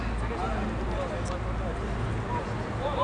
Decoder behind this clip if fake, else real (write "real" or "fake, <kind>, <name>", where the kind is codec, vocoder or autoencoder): real